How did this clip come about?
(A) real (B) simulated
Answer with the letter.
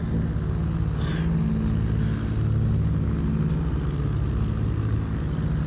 A